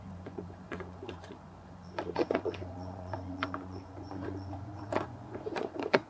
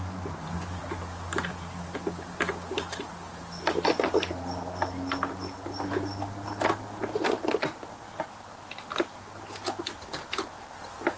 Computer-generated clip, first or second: first